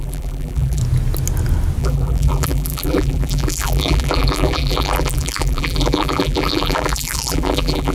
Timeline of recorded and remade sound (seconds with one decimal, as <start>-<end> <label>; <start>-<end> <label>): 0.0-0.8 remade; 0.8-1.8 recorded; 1.8-7.9 remade

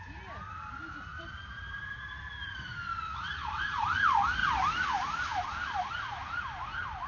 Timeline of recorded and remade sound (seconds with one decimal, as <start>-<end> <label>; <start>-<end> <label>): 0.0-1.1 recorded; 1.1-2.2 remade; 2.2-3.1 recorded; 3.1-3.7 remade; 3.7-7.1 recorded

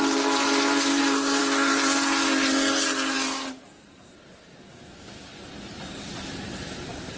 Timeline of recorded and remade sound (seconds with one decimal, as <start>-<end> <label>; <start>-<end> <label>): 0.0-1.4 remade; 1.4-3.6 recorded; 3.6-4.3 remade; 4.3-5.9 recorded; 5.9-7.2 remade

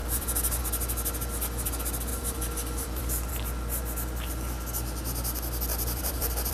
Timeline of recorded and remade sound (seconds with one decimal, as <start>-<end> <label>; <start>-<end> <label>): 0.0-0.6 remade; 0.6-2.1 recorded; 2.1-3.3 remade; 3.3-5.7 recorded; 5.7-6.5 remade

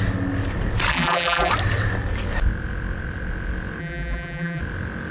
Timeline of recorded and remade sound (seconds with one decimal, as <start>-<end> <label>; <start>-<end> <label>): 0.0-0.9 recorded; 0.9-1.5 remade; 1.5-3.8 recorded; 3.8-4.6 remade; 4.6-5.1 recorded

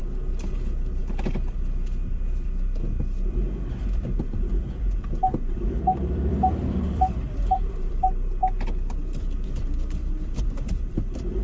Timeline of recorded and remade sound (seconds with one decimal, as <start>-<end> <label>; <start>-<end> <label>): 0.0-0.6 recorded; 0.6-8.4 remade; 8.4-9.2 recorded; 9.2-11.4 remade